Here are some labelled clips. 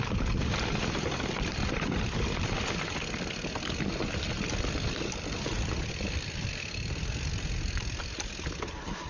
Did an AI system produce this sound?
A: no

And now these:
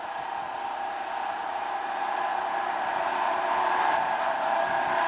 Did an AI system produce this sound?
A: no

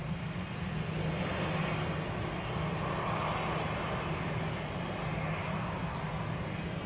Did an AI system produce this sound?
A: no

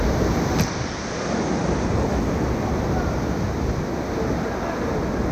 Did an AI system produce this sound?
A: no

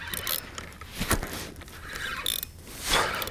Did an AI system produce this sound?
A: no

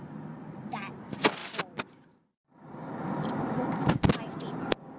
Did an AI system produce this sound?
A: no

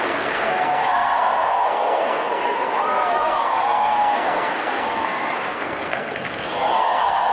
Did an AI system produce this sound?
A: yes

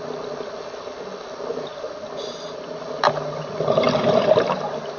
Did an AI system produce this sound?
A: no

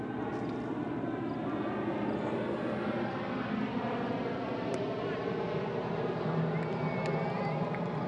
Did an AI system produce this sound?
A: no